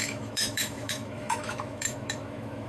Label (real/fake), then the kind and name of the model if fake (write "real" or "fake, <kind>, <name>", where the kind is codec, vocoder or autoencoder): fake, autoencoder, DAC-VAE